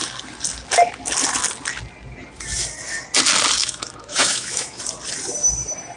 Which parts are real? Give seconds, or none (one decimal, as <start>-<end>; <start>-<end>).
0.0-3.6; 4.8-6.0